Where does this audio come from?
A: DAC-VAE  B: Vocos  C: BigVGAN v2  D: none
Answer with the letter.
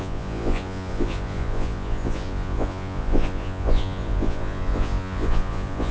B